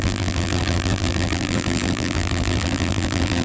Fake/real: fake